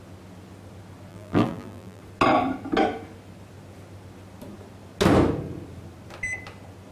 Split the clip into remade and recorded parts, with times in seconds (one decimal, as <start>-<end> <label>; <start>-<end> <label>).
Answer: 0.0-1.1 recorded; 1.1-2.0 remade; 2.0-6.9 recorded